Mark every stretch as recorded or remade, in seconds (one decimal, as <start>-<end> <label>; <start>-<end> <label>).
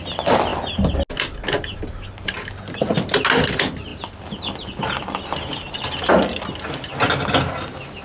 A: 0.0-8.0 recorded